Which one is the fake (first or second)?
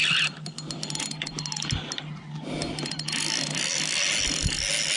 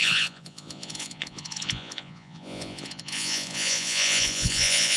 second